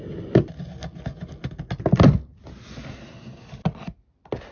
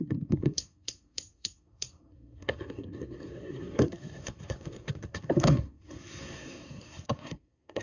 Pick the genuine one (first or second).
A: first